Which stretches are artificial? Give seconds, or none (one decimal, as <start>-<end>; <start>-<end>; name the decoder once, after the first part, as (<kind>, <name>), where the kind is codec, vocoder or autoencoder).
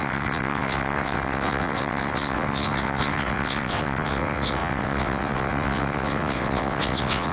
0.0-7.3 (vocoder, WaveNeXt)